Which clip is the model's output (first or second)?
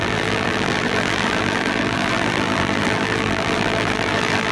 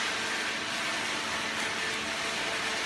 first